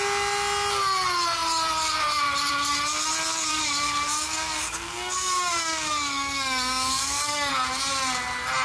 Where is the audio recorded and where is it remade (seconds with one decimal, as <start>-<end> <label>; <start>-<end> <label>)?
0.0-3.5 recorded; 3.5-7.5 remade; 7.5-8.6 recorded